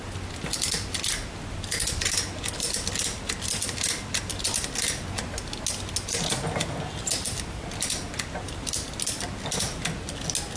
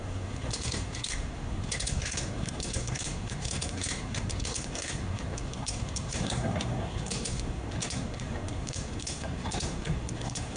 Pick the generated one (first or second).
second